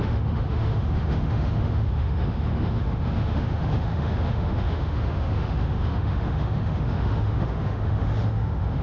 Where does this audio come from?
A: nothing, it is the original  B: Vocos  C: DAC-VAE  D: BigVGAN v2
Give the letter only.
C